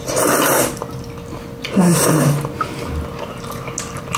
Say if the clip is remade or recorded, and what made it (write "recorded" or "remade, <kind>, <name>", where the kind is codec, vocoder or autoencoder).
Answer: recorded